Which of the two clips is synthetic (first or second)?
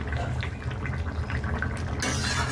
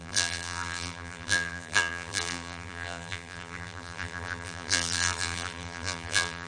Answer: second